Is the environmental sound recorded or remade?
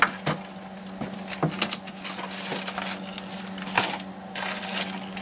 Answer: recorded